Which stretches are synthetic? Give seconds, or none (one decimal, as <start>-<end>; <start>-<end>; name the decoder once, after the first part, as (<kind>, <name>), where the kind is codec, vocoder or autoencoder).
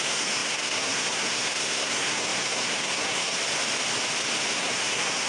0.0-3.4 (codec, SNAC); 4.5-5.3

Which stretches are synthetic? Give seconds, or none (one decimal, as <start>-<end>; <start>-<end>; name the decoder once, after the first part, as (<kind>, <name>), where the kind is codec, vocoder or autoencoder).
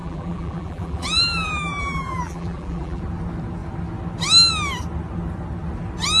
0.0-3.0 (vocoder, BigVGAN v2)